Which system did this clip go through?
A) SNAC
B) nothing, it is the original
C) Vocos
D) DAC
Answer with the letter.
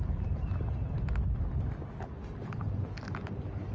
B